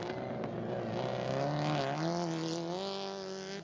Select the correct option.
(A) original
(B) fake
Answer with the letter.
A